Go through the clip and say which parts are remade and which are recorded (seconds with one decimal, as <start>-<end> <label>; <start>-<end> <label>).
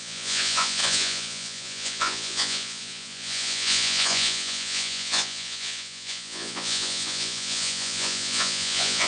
0.0-9.1 remade